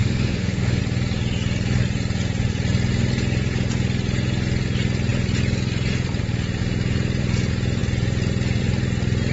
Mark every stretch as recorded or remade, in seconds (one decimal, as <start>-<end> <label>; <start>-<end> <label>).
0.0-0.8 remade; 0.8-9.3 recorded